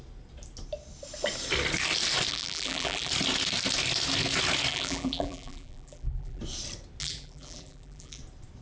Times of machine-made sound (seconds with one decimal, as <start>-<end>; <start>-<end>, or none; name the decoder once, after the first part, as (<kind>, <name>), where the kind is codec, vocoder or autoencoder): 2.3-3.1 (vocoder, BigVGAN v2); 4.7-6.4; 7.0-8.2